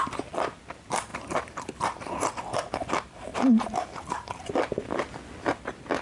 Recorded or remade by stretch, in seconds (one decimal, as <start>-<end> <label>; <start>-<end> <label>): 0.0-1.1 recorded; 1.1-2.3 remade; 2.3-3.3 recorded; 3.3-4.5 remade; 4.5-6.0 recorded